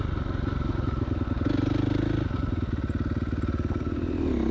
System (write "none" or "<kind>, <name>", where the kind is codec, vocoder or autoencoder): none